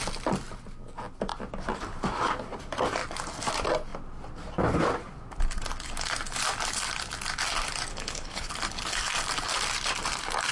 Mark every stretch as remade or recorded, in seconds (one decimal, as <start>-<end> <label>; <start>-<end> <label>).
0.0-7.9 recorded; 7.9-8.5 remade; 8.5-10.5 recorded